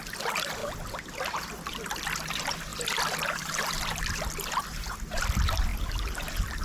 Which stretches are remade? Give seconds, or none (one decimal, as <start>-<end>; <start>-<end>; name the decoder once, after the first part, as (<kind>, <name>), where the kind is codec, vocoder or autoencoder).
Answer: none